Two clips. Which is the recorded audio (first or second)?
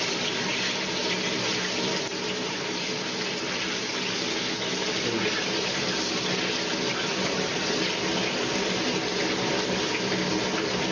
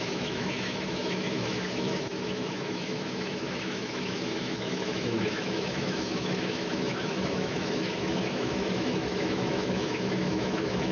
first